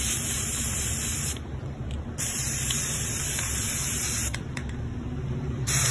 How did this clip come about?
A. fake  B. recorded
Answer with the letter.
A